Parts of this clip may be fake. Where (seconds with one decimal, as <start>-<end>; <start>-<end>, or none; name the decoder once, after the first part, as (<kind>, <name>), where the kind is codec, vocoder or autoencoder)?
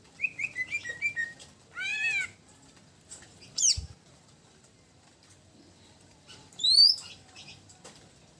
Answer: 0.0-8.4 (vocoder, BigVGAN v2)